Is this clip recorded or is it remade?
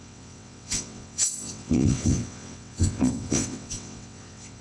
remade